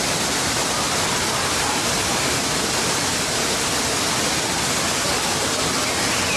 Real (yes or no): yes